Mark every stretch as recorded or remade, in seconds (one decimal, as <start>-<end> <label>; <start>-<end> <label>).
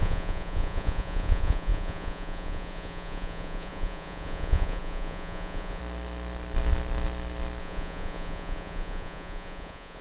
0.0-5.8 remade; 5.8-7.6 recorded; 7.6-10.0 remade